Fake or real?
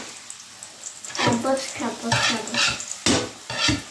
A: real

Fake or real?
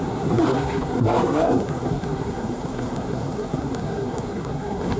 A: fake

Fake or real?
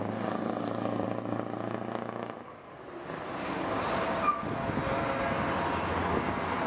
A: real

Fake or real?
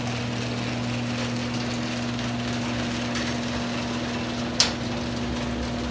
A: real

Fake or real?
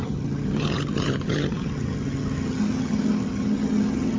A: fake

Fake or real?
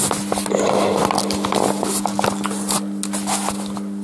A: real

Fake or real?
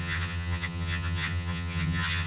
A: fake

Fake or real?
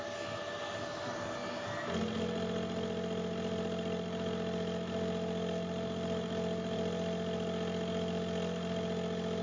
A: real